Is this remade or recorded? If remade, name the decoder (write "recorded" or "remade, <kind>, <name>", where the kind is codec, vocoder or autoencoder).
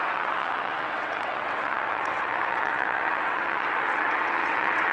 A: remade, vocoder, WaveNeXt